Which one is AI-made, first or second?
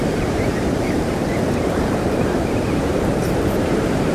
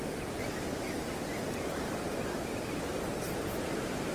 first